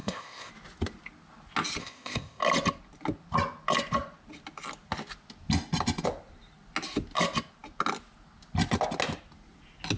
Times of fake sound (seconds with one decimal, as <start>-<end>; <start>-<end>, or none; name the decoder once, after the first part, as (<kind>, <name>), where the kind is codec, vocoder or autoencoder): 0.0-0.5 (codec, ZipCodec); 1.8-2.4